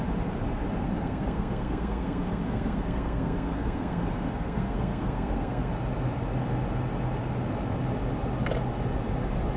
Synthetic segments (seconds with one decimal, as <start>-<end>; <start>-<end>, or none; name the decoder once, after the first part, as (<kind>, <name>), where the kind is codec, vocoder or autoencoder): 0.8-5.7 (codec, SNAC)